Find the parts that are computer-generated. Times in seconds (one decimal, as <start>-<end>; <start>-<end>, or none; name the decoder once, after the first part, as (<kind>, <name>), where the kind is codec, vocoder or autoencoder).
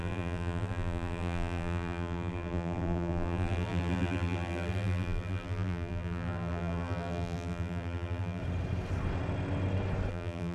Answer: 0.0-8.4 (vocoder, BigVGAN v2); 10.1-10.5